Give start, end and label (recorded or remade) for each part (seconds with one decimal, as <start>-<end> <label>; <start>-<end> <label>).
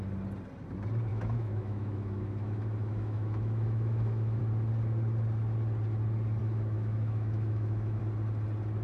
0.0-1.1 recorded; 1.1-4.4 remade; 4.4-6.4 recorded; 6.4-8.0 remade; 8.0-8.8 recorded